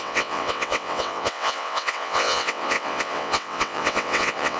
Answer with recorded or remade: remade